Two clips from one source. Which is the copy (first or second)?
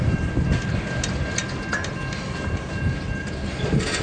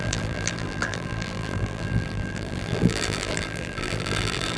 second